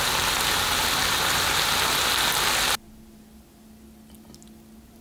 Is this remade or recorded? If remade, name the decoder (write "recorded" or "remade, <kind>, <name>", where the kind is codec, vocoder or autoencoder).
recorded